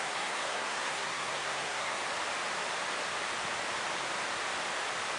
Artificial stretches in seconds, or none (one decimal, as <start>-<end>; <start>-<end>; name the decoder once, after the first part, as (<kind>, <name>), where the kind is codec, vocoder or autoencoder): 0.0-2.0 (codec, SNAC)